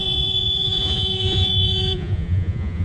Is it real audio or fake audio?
fake